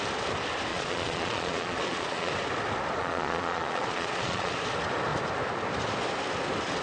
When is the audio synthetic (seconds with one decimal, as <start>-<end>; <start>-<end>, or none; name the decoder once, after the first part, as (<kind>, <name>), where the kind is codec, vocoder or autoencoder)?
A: 0.7-2.3 (vocoder, Vocos); 3.0-4.5